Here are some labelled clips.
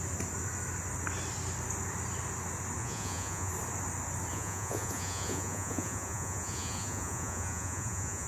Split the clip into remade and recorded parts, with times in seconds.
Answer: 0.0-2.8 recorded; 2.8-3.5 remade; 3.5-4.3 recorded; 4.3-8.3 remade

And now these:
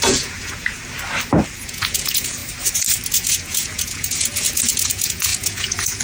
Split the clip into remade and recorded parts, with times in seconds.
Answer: 0.0-0.8 remade; 0.8-1.6 recorded; 1.6-2.4 remade; 2.4-3.1 recorded; 3.1-6.0 remade

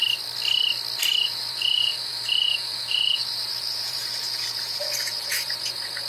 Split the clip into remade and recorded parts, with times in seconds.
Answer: 0.0-1.2 recorded; 1.2-6.1 remade

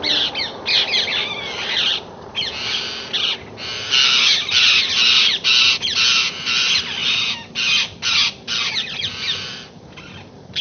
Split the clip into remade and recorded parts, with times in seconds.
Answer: 0.0-10.6 recorded

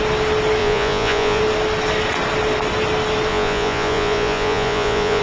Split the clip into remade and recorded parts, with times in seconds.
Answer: 0.0-0.6 recorded; 0.6-1.4 remade; 1.4-3.3 recorded; 3.3-5.2 remade

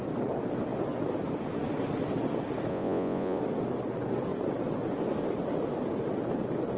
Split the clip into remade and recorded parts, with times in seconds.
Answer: 0.0-2.7 recorded; 2.7-3.4 remade; 3.4-6.8 recorded

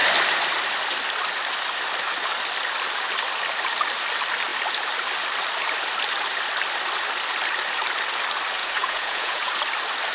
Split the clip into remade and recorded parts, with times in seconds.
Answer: 0.0-8.6 recorded; 8.6-9.5 remade; 9.5-10.1 recorded

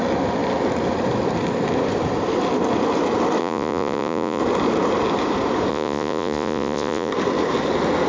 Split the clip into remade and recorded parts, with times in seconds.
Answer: 0.0-3.4 recorded; 3.4-4.4 remade; 4.4-5.7 recorded; 5.7-7.1 remade; 7.1-8.1 recorded